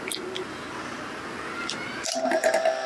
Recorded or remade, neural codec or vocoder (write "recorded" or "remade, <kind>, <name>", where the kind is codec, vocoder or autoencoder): recorded